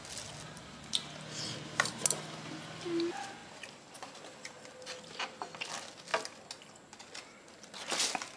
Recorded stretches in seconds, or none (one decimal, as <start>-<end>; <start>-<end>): 1.9-3.4; 4.6-8.4